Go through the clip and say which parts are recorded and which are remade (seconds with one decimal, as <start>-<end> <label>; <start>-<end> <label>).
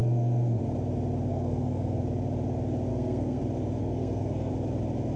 0.0-0.6 remade; 0.6-1.3 recorded; 1.3-2.0 remade; 2.0-2.9 recorded; 2.9-3.4 remade; 3.4-3.8 recorded; 3.8-4.5 remade; 4.5-5.2 recorded